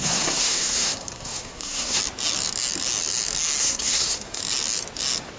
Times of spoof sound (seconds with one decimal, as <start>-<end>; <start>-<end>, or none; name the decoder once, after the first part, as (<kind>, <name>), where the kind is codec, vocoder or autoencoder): 0.0-2.0 (codec, SNAC); 3.6-4.4

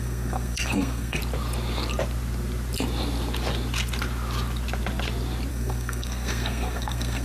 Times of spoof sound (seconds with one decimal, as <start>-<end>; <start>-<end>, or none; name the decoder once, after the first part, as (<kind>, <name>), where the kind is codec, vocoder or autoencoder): 0.0-1.2 (codec, SNAC); 5.5-7.2

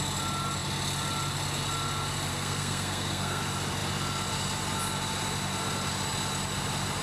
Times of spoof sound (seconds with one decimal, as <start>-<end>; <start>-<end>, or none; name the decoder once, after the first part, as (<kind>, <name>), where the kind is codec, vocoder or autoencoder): 2.3-3.4 (codec, SNAC)

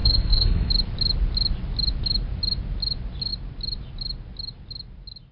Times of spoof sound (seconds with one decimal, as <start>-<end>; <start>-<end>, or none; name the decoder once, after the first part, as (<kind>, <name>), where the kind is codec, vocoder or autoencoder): 0.0-0.7 (codec, SNAC)

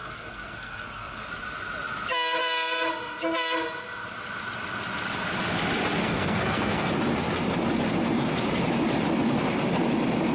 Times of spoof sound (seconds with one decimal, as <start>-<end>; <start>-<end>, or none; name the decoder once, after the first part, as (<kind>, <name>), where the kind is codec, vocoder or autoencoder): 0.0-1.3 (codec, SNAC); 6.0-6.9